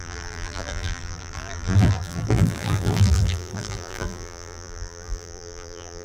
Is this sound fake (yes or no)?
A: yes